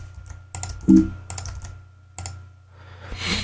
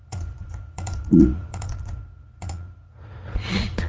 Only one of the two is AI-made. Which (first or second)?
second